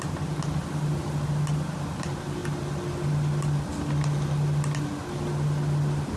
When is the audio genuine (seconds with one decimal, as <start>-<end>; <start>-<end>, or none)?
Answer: 0.0-6.2